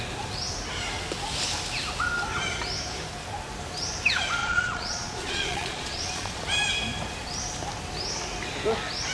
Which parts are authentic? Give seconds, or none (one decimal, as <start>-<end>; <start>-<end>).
0.0-4.4; 6.4-9.1